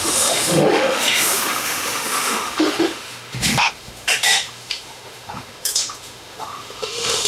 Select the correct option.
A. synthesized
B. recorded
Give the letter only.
A